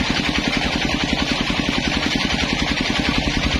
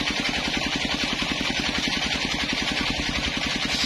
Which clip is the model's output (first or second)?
first